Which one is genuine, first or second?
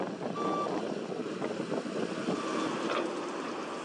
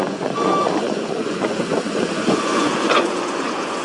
first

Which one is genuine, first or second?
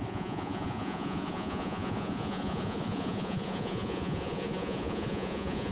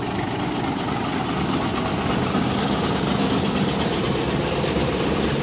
second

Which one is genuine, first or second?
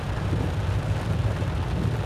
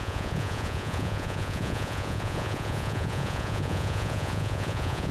first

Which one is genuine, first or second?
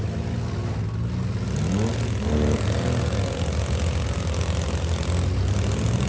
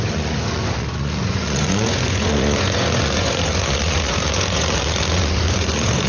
first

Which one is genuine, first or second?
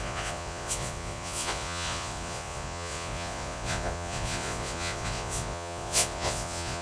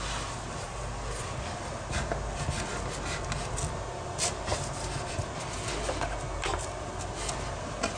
second